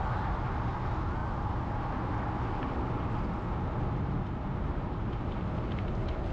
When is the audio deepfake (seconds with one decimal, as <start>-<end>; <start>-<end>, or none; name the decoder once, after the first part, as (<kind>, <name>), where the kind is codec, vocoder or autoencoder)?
none